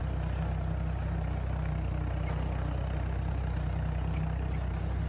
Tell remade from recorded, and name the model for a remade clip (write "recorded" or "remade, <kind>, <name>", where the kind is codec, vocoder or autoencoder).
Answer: recorded